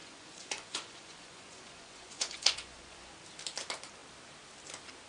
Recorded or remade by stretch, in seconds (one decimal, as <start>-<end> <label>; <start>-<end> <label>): 0.0-3.1 remade; 3.1-5.1 recorded